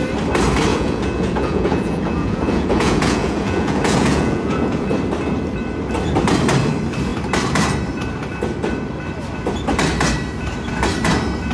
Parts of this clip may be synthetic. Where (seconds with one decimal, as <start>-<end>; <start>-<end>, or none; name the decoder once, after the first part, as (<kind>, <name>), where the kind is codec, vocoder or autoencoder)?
0.7-4.9 (vocoder, Vocos)